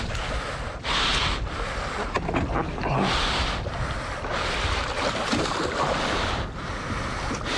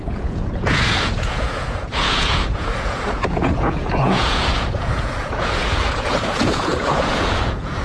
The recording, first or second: first